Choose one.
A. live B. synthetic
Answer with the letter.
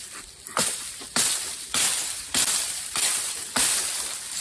B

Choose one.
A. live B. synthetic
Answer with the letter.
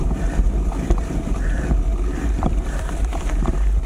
B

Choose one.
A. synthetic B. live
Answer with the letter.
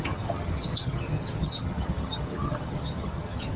A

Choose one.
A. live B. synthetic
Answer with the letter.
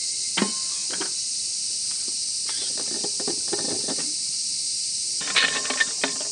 A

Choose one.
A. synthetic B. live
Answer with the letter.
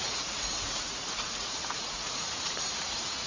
A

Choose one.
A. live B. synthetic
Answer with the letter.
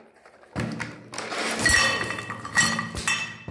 A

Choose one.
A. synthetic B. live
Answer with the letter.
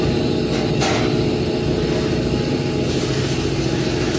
B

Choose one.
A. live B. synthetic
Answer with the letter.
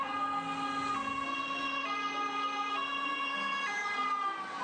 A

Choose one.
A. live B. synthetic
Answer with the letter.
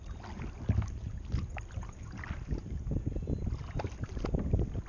A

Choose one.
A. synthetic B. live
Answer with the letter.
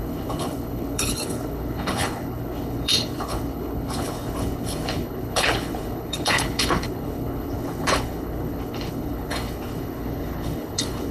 A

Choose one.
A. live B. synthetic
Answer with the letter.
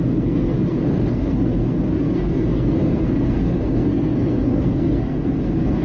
B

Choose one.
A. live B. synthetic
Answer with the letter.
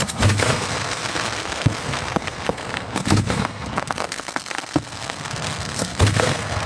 B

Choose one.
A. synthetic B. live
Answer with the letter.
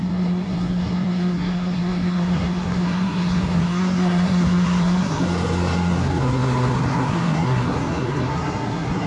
A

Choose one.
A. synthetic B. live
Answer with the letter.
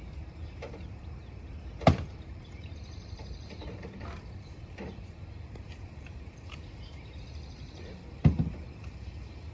A